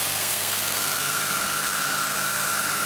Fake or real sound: fake